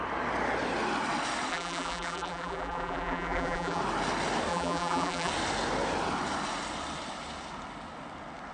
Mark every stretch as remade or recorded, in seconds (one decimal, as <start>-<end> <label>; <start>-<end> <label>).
0.0-1.5 recorded; 1.5-3.8 remade; 3.8-4.5 recorded; 4.5-5.3 remade; 5.3-8.5 recorded